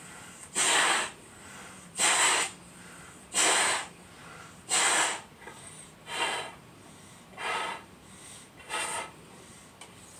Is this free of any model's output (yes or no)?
no